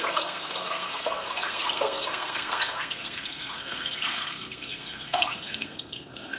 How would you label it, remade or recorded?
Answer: remade